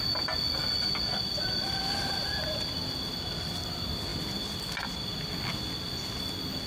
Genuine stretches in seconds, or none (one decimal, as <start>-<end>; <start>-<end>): 0.0-1.1; 3.1-6.7